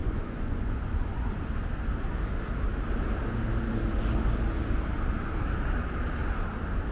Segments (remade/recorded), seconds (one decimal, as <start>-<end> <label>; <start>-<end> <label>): 0.0-1.3 remade; 1.3-6.9 recorded

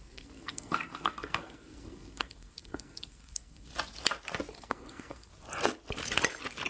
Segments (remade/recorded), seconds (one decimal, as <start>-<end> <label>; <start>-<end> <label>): 0.0-3.7 remade; 3.7-4.5 recorded; 4.5-5.3 remade; 5.3-6.7 recorded

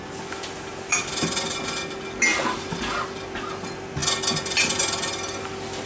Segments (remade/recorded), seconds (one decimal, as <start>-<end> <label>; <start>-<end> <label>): 0.0-5.9 recorded

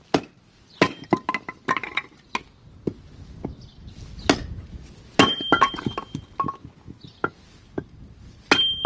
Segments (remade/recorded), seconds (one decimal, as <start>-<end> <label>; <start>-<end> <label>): 0.0-8.9 recorded

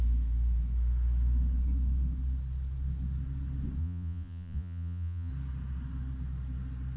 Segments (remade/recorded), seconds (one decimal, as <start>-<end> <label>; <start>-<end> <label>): 0.0-3.8 recorded; 3.8-5.3 remade; 5.3-7.0 recorded

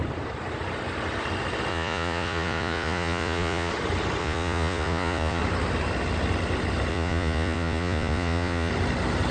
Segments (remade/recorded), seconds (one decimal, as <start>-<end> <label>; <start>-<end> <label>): 0.0-1.7 recorded; 1.7-3.7 remade; 3.7-4.2 recorded; 4.2-5.4 remade; 5.4-6.9 recorded; 6.9-8.7 remade; 8.7-9.3 recorded

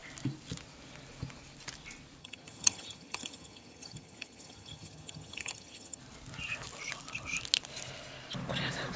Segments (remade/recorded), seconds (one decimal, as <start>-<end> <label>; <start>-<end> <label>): 0.0-2.2 recorded; 2.2-6.0 remade; 6.0-9.0 recorded